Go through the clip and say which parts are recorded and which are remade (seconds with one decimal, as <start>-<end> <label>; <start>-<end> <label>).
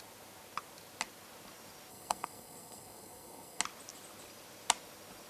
0.0-1.9 recorded; 1.9-3.6 remade; 3.6-5.3 recorded